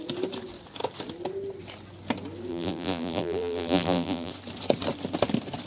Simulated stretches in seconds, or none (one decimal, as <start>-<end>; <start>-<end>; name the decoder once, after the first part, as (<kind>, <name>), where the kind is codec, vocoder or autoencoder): 2.5-4.3 (vocoder, BigVGAN v2)